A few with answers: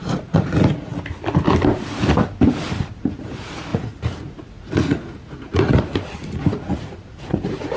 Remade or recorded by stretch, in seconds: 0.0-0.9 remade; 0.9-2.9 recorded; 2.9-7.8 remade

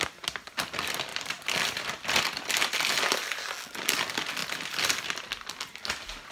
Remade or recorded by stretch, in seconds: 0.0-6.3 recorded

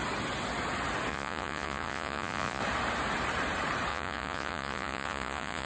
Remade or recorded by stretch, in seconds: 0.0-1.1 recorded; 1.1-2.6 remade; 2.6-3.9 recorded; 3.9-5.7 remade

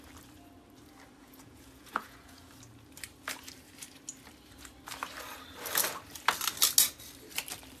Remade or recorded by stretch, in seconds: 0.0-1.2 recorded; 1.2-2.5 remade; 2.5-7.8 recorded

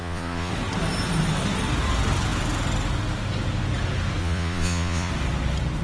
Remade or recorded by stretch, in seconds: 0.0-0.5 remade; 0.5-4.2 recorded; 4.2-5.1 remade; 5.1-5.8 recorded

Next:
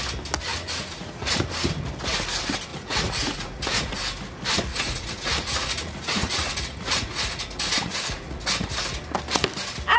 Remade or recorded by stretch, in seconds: 0.0-0.5 recorded; 0.5-1.5 remade; 1.5-2.7 recorded; 2.7-4.0 remade; 4.0-4.7 recorded; 4.7-8.4 remade; 8.4-10.0 recorded